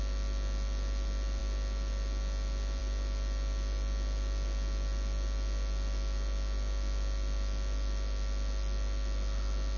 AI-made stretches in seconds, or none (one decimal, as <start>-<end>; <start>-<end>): none